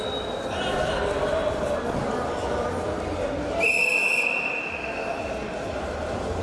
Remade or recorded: recorded